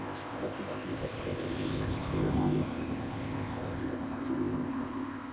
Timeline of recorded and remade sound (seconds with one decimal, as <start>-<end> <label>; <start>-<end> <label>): 0.0-5.3 remade